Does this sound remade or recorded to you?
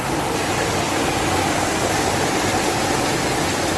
recorded